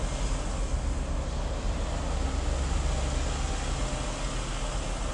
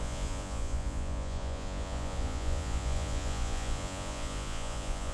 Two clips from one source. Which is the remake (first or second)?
second